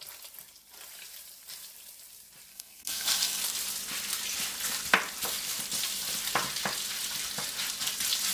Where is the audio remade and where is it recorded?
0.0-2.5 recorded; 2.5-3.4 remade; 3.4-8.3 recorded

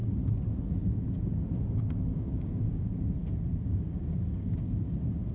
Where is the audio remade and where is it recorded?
0.0-2.1 recorded; 2.1-2.9 remade; 2.9-3.7 recorded; 3.7-4.7 remade; 4.7-5.3 recorded